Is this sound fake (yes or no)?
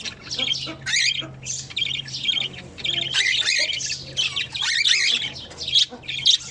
no